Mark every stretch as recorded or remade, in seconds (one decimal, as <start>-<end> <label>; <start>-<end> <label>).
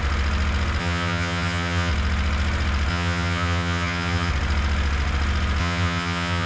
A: 0.0-0.8 recorded; 0.8-1.9 remade; 1.9-2.9 recorded; 2.9-4.3 remade; 4.3-5.6 recorded; 5.6-6.5 remade